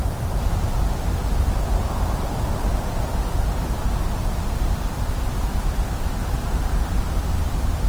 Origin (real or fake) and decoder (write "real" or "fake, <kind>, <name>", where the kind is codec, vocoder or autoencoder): fake, vocoder, BigVGAN v2